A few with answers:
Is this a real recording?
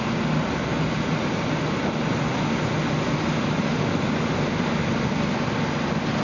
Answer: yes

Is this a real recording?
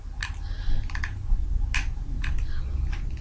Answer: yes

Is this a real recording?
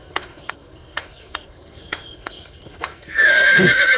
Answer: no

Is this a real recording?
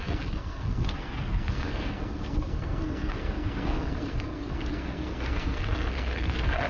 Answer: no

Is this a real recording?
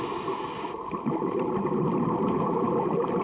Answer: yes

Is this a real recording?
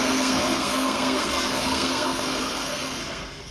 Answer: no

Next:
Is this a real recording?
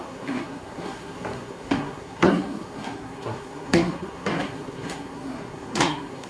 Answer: no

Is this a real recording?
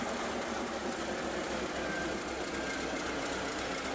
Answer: yes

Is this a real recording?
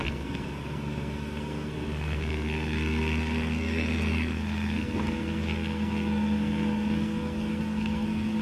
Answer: no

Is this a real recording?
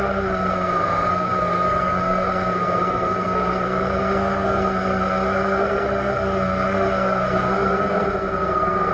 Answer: no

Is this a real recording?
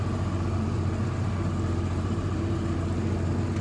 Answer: yes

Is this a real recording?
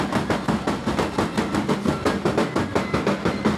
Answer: yes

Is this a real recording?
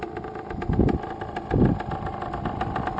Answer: yes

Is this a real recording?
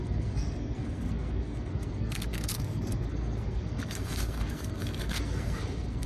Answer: no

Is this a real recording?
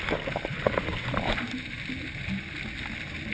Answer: yes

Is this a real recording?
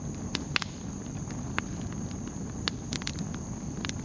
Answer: yes